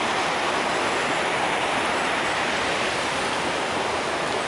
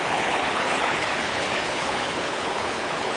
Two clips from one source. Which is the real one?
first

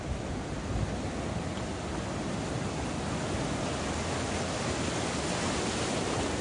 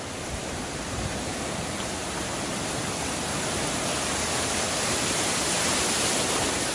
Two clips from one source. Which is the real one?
first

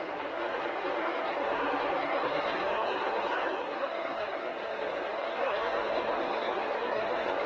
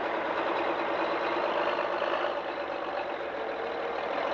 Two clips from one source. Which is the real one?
second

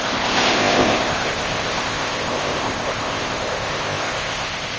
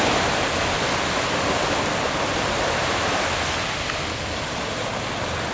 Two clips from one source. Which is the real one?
second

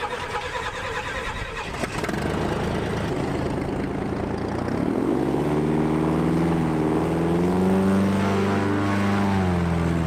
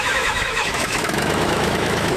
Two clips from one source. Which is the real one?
first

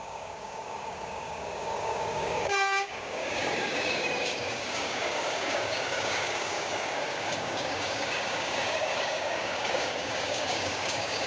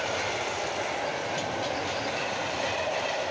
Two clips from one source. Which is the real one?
second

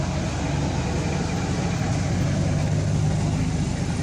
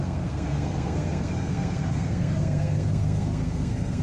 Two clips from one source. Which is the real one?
first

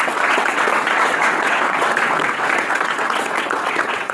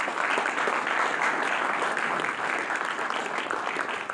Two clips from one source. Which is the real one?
second